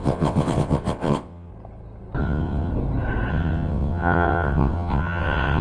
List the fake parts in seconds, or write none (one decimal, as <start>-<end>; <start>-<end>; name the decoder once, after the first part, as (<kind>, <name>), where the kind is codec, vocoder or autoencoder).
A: 0.0-1.5 (vocoder, WaveNeXt); 2.2-2.7; 3.3-5.6